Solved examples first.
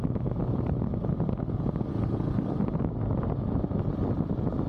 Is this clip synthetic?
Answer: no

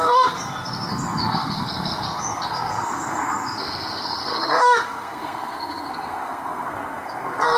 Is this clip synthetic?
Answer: yes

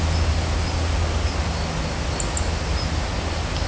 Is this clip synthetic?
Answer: no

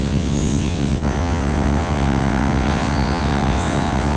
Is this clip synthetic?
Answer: yes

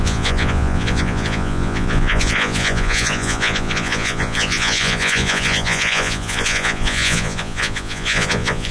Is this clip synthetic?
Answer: yes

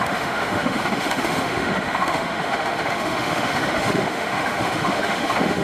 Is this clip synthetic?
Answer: yes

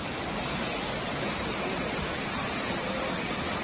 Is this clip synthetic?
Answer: no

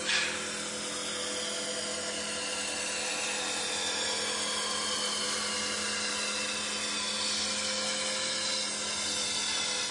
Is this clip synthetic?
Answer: no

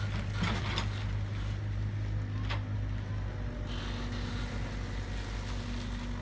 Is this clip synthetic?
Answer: no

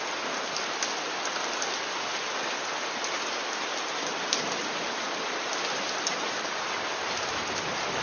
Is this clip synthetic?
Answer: no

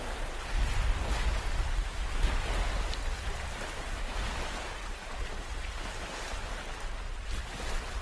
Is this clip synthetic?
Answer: no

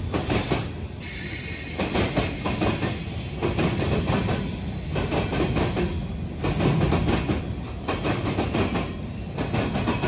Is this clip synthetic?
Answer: no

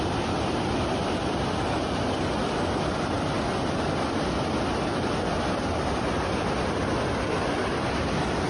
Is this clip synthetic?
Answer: no